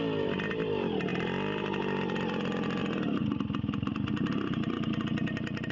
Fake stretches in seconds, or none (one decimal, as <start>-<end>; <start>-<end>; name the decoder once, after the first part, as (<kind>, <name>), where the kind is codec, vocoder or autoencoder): none

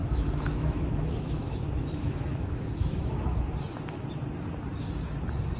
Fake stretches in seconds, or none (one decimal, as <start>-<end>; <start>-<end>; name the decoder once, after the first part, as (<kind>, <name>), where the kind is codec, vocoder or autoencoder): 0.0-3.4 (autoencoder, DAC-VAE)

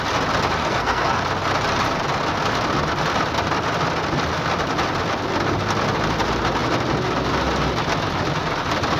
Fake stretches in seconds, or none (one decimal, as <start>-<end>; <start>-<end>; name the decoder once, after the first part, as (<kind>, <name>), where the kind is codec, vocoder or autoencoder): 0.6-1.2 (codec, SNAC)

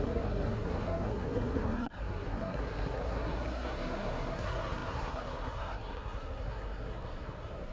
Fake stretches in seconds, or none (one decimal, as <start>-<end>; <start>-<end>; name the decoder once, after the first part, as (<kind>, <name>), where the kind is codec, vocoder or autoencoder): 0.0-7.7 (codec, SNAC)

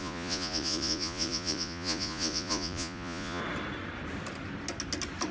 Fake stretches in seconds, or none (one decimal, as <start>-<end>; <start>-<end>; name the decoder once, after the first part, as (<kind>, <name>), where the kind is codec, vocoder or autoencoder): 0.0-3.4 (vocoder, Vocos)

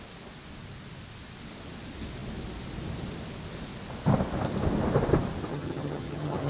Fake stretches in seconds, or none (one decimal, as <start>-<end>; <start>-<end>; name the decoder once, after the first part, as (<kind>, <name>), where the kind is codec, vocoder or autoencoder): 5.5-6.5 (vocoder, HiFi-GAN)